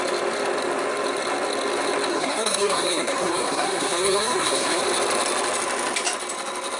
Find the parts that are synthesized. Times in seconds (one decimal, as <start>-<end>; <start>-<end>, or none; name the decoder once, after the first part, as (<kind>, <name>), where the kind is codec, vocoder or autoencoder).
2.1-4.8 (codec, SNAC)